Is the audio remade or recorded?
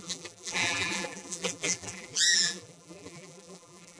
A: remade